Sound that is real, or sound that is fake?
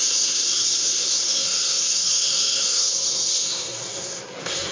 fake